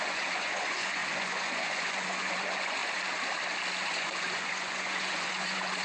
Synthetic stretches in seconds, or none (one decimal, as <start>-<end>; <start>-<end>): 0.0-2.8; 3.9-5.8